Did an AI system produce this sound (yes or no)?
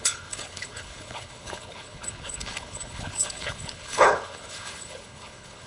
yes